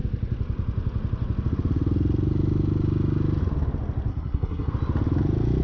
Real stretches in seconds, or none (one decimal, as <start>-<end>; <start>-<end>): 0.0-4.1; 4.7-5.6